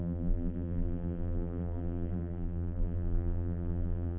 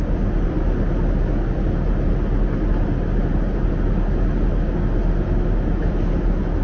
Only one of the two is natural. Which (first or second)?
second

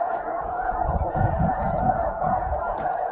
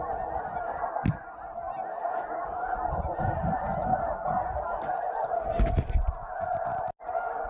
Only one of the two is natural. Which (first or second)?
second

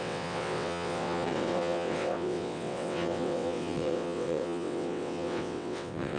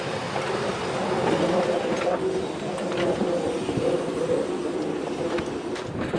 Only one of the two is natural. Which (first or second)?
second